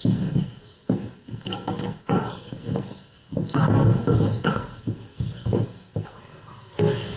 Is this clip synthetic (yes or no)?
yes